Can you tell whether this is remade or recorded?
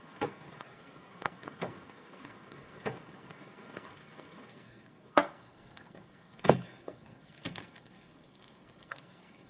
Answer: remade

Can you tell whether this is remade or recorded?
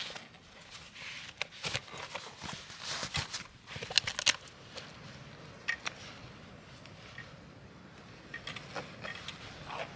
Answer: recorded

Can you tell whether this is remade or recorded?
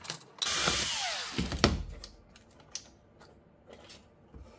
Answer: recorded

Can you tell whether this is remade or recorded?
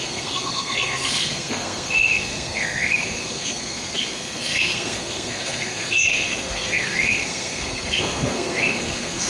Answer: remade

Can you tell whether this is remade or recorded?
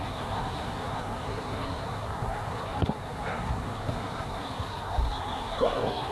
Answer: remade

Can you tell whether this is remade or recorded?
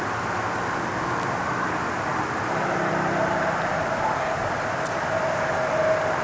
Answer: recorded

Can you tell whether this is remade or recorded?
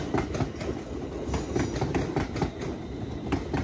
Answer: recorded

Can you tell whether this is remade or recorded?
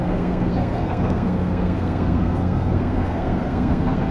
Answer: remade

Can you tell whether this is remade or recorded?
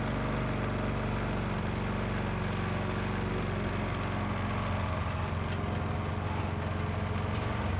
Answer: recorded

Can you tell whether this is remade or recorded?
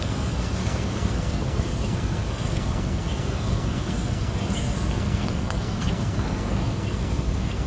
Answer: remade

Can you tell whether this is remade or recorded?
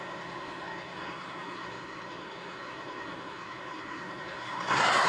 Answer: remade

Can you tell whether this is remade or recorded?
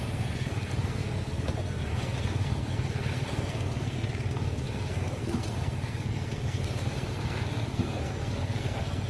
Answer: remade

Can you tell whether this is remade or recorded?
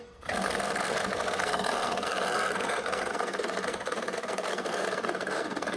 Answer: remade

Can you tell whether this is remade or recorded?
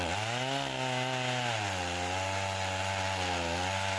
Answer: recorded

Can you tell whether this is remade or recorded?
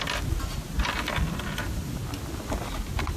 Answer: recorded